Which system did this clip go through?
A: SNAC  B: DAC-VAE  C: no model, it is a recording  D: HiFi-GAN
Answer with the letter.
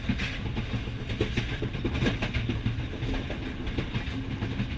C